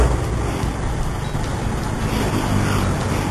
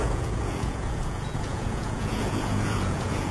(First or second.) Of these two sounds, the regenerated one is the second